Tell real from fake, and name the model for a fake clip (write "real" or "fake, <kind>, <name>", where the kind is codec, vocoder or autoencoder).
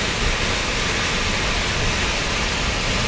real